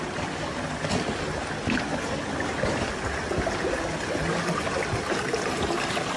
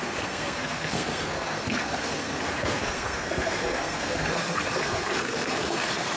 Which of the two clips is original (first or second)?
first